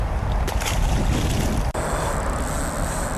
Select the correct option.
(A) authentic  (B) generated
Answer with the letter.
A